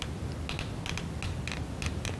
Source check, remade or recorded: recorded